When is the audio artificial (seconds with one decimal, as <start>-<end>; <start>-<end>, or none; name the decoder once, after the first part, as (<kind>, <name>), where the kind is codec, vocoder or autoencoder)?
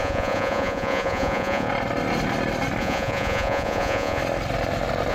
0.0-1.7 (vocoder, Vocos); 2.8-4.2